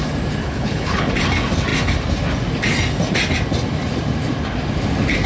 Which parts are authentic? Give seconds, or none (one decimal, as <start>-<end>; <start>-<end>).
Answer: 0.0-0.4; 1.1-5.3